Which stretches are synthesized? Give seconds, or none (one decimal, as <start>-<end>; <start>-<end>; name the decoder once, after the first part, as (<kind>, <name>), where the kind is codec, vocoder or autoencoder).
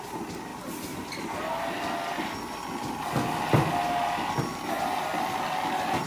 none